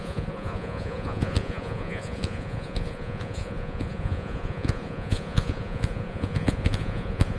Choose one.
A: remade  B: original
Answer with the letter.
A